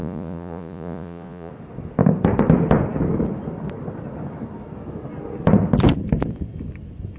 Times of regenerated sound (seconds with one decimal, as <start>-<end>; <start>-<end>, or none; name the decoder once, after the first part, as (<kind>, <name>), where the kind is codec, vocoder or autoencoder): 0.0-1.5 (vocoder, Vocos)